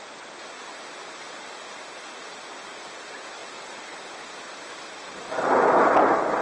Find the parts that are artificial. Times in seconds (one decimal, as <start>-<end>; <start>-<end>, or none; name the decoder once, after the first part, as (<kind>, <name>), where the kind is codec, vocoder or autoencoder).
none